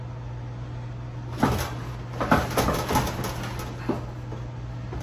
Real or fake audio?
real